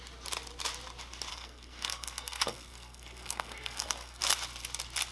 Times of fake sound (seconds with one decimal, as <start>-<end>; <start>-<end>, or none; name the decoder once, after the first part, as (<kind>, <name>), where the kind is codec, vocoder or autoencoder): 1.3-4.2 (codec, SNAC)